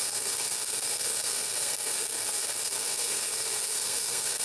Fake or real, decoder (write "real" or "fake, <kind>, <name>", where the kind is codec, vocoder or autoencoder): fake, codec, SNAC